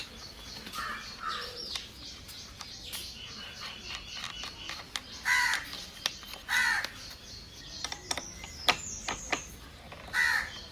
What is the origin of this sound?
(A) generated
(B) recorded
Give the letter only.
B